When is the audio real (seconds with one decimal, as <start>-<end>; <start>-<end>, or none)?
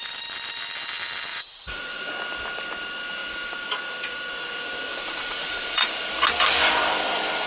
0.0-1.3; 2.1-4.9; 5.9-7.5